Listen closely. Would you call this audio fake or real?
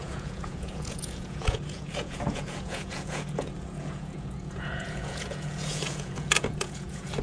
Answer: fake